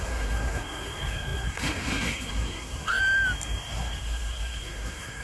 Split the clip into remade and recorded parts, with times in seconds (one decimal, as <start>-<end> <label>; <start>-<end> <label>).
0.0-3.0 remade; 3.0-3.6 recorded; 3.6-5.2 remade